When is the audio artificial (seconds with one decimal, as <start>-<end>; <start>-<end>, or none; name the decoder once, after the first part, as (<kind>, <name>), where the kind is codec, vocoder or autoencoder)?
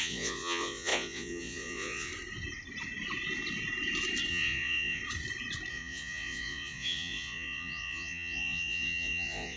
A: 0.0-2.1 (vocoder, Vocos); 4.3-5.0; 5.7-9.6